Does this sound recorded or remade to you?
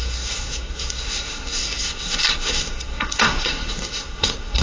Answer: remade